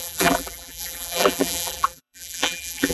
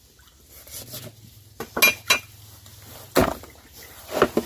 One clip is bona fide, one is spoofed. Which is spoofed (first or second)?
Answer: first